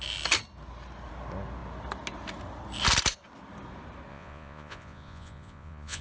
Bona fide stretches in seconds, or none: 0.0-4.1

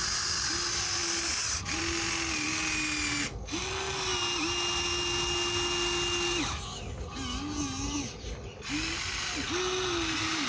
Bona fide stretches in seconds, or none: 0.0-10.5

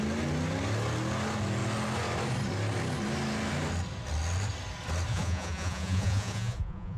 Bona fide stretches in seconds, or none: 0.0-5.1

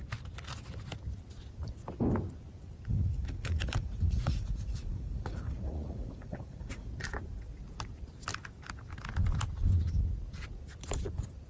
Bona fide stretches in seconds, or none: 0.0-2.9; 6.9-11.5

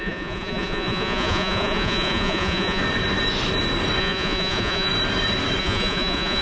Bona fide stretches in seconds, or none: 2.8-4.0; 4.9-5.6